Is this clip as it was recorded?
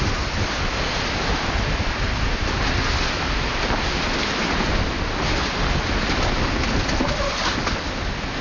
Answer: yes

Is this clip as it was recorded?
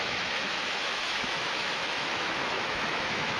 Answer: no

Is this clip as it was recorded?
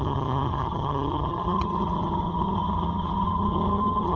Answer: no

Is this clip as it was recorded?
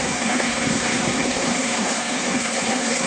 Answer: no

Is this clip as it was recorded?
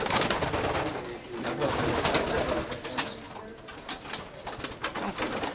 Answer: yes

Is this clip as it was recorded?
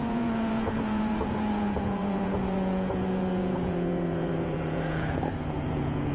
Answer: no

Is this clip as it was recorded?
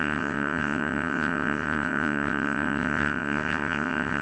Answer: no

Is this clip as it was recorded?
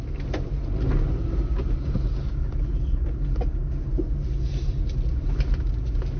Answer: yes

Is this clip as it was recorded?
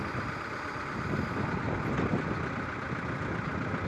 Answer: yes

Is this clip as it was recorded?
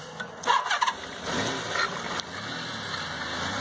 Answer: yes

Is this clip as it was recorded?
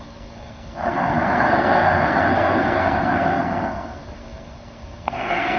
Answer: no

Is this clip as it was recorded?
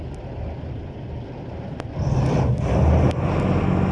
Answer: yes